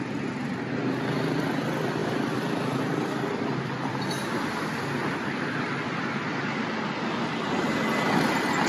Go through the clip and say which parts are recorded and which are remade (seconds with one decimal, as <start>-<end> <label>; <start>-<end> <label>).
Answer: 0.0-2.0 recorded; 2.0-6.0 remade; 6.0-8.7 recorded